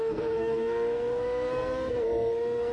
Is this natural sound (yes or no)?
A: no